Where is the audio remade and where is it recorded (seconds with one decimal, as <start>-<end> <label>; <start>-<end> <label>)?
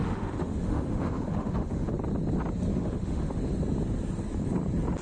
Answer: 0.0-1.9 remade; 1.9-2.7 recorded; 2.7-3.4 remade; 3.4-5.0 recorded